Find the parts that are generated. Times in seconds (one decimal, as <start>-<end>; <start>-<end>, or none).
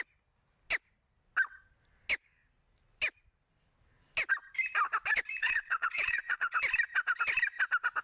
5.4-6.6